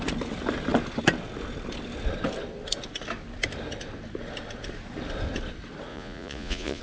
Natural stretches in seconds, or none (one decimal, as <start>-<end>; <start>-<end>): 0.0-5.9